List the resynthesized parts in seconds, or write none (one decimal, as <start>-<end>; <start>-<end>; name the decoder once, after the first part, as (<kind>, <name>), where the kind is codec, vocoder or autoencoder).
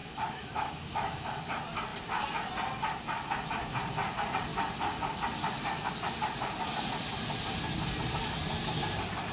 0.0-1.5 (autoencoder, DAC-VAE)